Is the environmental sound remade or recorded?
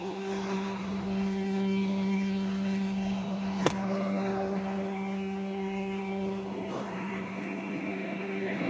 remade